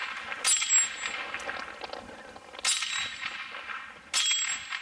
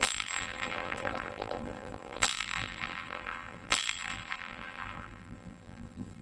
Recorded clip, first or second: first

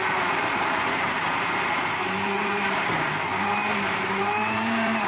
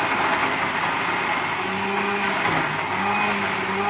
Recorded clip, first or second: second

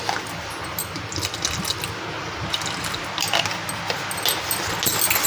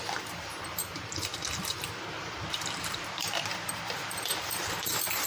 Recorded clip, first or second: first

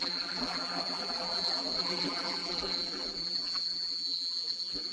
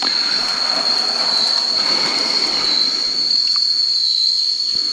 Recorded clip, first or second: second